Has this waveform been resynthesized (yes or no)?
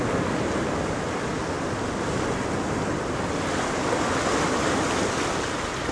no